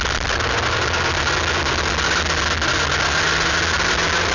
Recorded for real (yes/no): yes